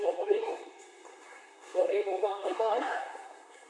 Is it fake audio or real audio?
fake